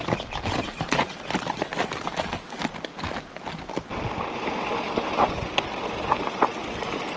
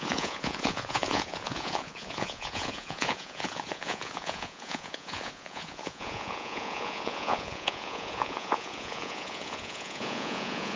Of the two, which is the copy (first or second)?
second